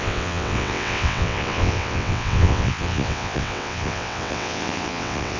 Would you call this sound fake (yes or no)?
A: yes